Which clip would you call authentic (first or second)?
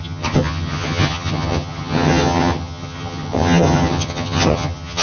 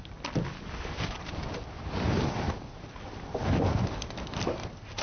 second